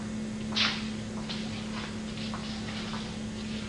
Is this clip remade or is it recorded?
recorded